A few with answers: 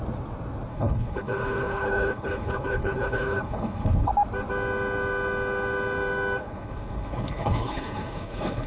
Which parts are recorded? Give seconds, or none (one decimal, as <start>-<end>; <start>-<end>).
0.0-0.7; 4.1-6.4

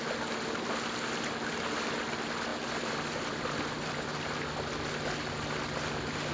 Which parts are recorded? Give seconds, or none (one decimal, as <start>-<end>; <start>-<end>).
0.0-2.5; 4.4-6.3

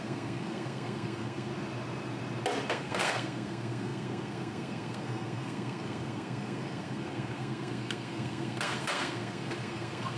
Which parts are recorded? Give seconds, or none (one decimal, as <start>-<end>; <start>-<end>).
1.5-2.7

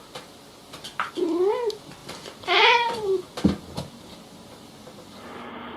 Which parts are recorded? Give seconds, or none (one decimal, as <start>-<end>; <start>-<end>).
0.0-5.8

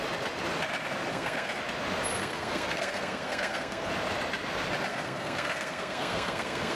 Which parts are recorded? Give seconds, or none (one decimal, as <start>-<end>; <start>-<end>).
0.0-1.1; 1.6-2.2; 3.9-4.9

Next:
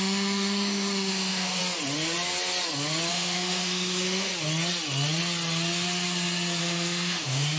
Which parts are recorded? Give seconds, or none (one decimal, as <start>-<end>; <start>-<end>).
1.6-3.1; 4.3-6.6

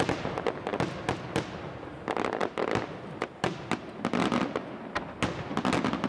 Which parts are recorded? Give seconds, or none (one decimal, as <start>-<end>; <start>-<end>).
0.0-6.1

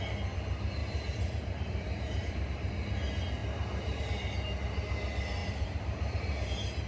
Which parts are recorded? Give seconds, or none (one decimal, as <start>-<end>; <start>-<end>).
0.0-0.8; 2.3-3.4; 4.0-5.4; 6.5-6.9